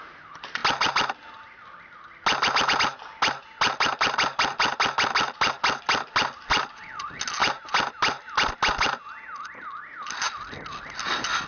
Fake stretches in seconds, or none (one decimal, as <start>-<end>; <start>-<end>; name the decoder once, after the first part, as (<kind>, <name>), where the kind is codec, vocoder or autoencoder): none

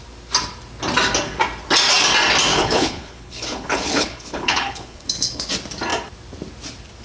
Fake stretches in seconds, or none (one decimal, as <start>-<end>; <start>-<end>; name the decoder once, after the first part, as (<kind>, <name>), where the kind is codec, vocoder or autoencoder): 2.5-5.5 (codec, HILCodec)

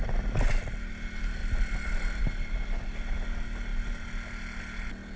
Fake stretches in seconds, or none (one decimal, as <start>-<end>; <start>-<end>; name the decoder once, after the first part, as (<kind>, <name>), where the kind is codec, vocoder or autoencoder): 1.4-2.2 (vocoder, BigVGAN v2)

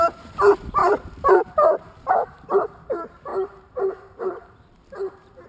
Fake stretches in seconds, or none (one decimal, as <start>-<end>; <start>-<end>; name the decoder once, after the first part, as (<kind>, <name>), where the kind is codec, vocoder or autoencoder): 0.0-5.5 (vocoder, BigVGAN v2)

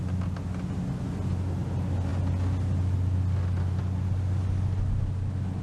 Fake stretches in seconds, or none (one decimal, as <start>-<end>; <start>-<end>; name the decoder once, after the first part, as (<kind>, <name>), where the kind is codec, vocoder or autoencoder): none